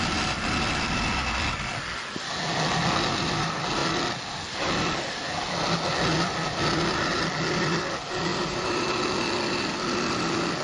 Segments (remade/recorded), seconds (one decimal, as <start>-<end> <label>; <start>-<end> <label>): 0.0-8.3 recorded; 8.3-9.0 remade; 9.0-10.6 recorded

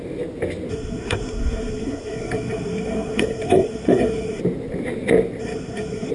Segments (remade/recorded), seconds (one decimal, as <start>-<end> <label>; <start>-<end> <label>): 0.0-0.7 recorded; 0.7-4.4 remade; 4.4-5.4 recorded; 5.4-6.1 remade